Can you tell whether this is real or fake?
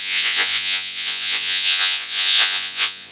fake